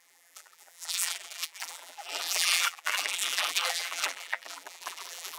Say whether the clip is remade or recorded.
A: remade